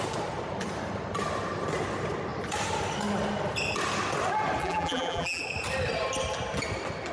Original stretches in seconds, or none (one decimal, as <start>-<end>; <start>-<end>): 0.0-4.6; 5.4-7.1